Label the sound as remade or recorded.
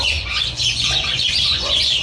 remade